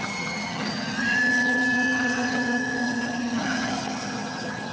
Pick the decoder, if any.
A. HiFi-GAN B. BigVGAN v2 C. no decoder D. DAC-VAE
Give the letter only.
A